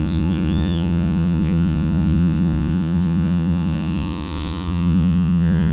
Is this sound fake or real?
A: fake